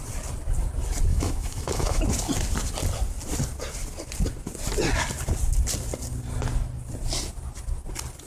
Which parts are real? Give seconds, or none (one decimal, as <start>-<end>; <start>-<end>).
0.0-1.1; 2.0-8.3